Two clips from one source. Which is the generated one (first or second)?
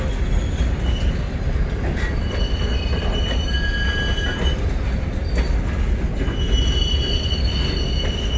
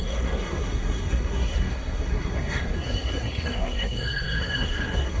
second